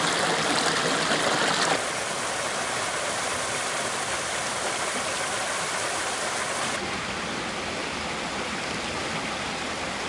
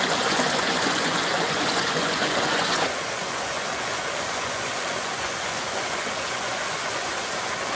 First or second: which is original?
first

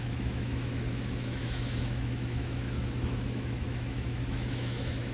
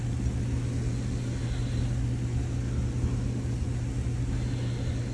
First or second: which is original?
second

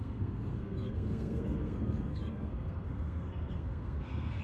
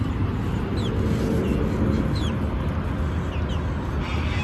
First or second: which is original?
second